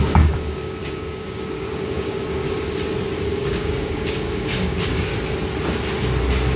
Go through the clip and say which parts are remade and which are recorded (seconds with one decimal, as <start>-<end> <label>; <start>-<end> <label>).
0.0-2.4 remade; 2.4-3.3 recorded; 3.3-5.1 remade; 5.1-6.6 recorded